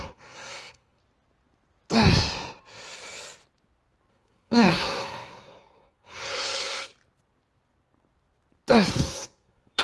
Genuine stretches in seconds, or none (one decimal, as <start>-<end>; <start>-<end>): 1.0-4.1; 6.9-8.9